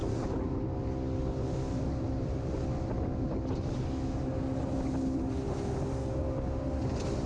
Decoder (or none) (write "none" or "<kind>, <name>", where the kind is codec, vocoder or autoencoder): none